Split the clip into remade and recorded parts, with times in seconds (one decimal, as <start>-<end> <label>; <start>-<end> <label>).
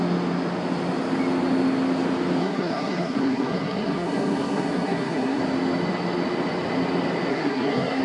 0.0-2.4 recorded; 2.4-5.4 remade; 5.4-7.3 recorded; 7.3-8.0 remade